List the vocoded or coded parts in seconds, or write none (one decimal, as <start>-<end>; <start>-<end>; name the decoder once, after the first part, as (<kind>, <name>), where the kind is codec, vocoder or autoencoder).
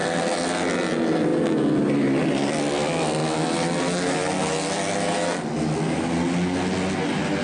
none